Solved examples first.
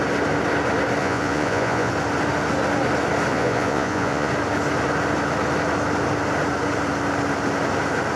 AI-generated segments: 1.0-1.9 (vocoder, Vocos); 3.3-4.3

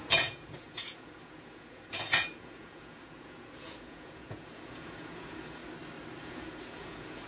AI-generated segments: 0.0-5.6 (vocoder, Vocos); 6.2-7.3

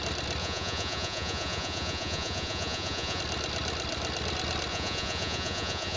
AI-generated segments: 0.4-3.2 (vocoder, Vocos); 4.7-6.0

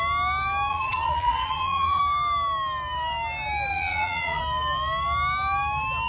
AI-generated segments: 0.7-2.0 (vocoder, Vocos); 3.7-4.4